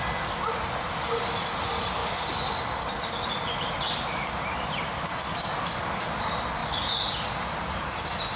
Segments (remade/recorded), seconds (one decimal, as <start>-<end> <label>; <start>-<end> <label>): 0.0-8.4 recorded